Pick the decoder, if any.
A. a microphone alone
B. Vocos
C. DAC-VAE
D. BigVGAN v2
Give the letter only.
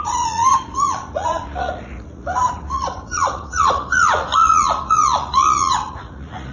B